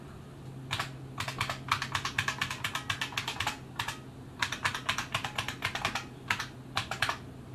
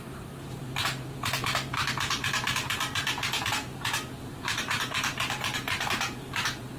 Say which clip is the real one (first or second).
first